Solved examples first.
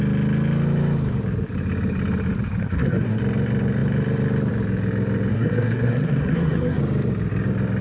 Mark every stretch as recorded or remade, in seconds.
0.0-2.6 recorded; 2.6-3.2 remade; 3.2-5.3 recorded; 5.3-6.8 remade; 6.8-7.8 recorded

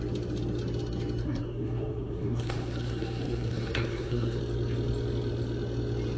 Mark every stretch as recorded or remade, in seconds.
0.0-1.2 recorded; 1.2-4.4 remade; 4.4-6.2 recorded

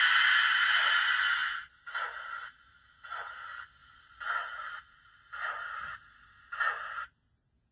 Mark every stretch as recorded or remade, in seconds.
0.0-7.7 recorded

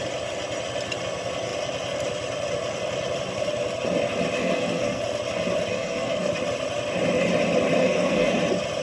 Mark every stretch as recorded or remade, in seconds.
0.0-4.4 recorded; 4.4-5.0 remade; 5.0-5.7 recorded; 5.7-6.3 remade; 6.3-7.8 recorded; 7.8-8.4 remade; 8.4-8.8 recorded